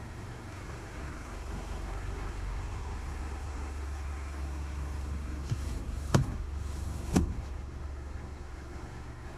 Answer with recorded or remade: remade